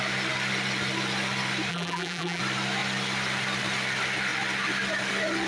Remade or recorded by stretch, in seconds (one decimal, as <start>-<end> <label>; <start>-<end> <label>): 0.0-1.7 recorded; 1.7-2.4 remade; 2.4-5.5 recorded